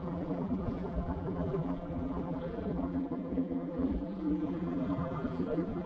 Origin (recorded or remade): remade